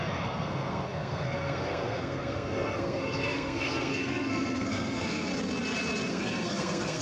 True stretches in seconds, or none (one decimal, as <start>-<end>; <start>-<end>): 5.3-6.1